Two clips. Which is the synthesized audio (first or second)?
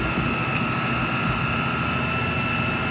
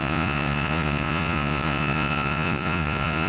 second